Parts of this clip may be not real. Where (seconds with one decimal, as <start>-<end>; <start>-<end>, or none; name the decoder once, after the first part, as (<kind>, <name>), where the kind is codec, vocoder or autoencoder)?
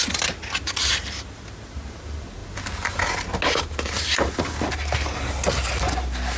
none